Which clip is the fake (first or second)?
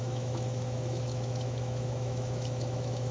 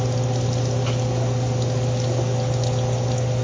first